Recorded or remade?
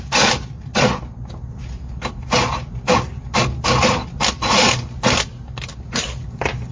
recorded